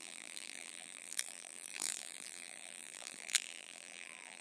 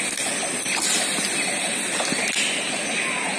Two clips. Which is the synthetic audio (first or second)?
first